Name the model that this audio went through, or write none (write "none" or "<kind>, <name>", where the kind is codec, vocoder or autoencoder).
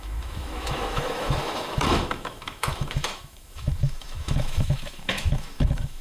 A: autoencoder, DAC-VAE